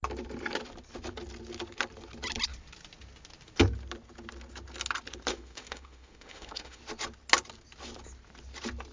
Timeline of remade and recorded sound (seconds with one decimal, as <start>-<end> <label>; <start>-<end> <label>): 0.0-5.3 recorded; 5.3-6.8 remade; 6.8-8.9 recorded